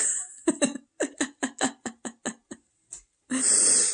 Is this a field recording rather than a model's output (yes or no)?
yes